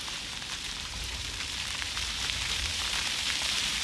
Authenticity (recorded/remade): remade